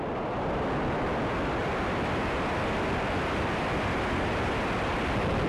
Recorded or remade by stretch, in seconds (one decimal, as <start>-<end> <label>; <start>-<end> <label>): 0.0-1.6 recorded; 1.6-4.9 remade; 4.9-5.5 recorded